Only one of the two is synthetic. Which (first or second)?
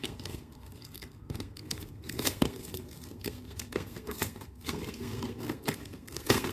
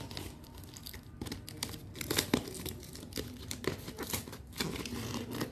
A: first